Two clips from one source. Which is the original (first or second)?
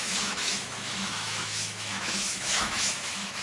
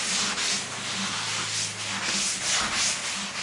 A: second